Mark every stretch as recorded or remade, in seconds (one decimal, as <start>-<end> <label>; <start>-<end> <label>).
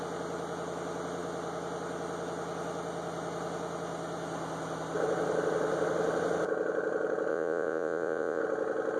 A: 0.0-7.3 recorded; 7.3-8.4 remade; 8.4-9.0 recorded